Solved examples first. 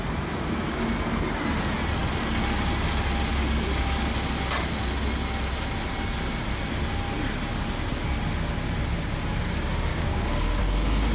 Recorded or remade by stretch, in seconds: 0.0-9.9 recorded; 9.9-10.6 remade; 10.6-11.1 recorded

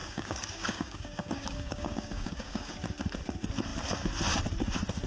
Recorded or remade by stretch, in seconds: 0.0-2.7 remade; 2.7-5.1 recorded

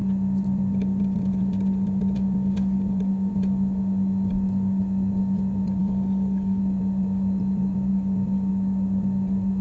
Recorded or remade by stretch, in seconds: 0.0-5.8 recorded; 5.8-6.6 remade; 6.6-9.6 recorded

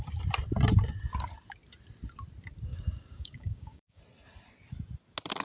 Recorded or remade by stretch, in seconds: 0.0-2.7 recorded; 2.7-4.0 remade; 4.0-5.4 recorded